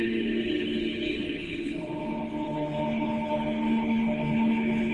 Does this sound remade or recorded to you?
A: remade